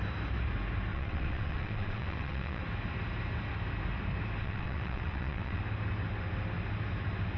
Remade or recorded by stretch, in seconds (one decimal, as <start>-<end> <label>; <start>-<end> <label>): 0.0-0.9 recorded; 0.9-2.6 remade; 2.6-4.4 recorded; 4.4-5.6 remade; 5.6-7.4 recorded